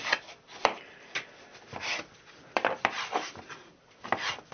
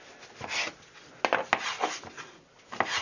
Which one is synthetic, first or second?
first